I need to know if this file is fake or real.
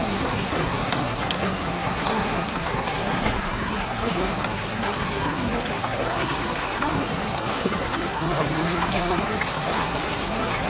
fake